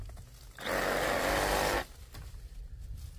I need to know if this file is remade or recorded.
recorded